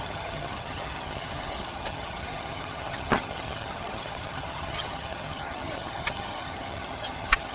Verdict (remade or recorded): remade